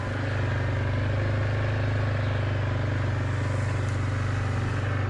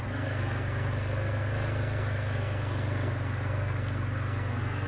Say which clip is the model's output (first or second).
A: second